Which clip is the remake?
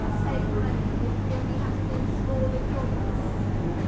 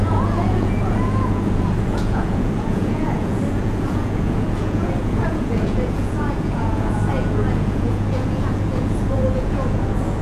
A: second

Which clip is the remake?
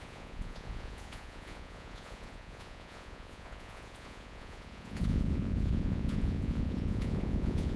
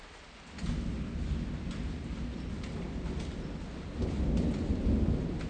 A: first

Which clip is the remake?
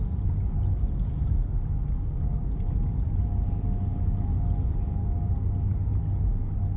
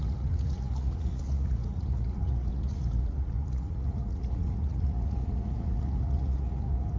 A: second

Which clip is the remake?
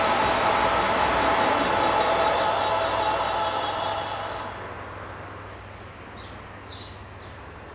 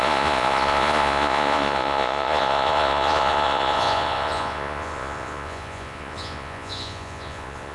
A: second